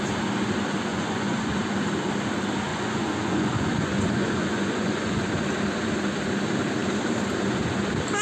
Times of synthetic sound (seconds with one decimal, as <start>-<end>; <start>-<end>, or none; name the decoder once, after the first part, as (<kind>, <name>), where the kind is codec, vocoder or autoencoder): 0.9-1.6 (vocoder, Vocos); 2.7-5.3